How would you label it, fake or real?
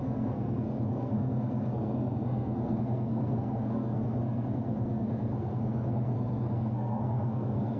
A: fake